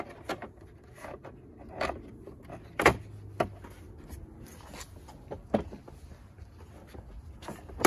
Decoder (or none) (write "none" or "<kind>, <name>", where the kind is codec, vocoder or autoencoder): none